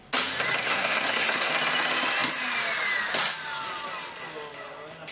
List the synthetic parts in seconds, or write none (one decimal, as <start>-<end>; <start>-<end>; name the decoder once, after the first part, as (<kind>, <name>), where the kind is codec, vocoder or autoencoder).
0.6-1.5 (codec, SNAC)